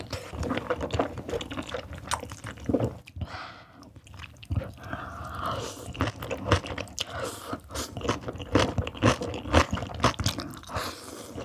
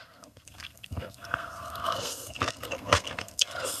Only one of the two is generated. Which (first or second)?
second